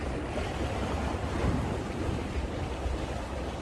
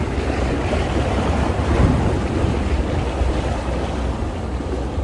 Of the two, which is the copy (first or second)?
first